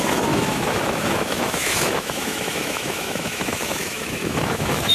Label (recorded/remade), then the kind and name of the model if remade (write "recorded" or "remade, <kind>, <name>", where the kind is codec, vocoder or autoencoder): remade, autoencoder, DAC-VAE